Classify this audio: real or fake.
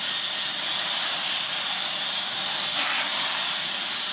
real